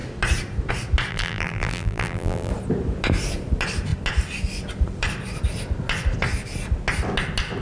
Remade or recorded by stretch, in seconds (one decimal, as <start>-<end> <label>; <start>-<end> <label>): 0.0-1.1 recorded; 1.1-2.5 remade; 2.5-7.6 recorded